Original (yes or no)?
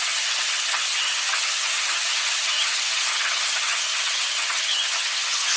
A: no